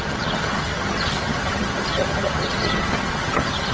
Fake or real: fake